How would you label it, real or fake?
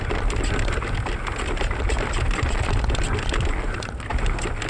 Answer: real